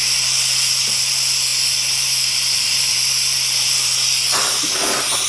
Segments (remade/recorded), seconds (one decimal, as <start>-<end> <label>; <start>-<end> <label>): 0.0-5.3 recorded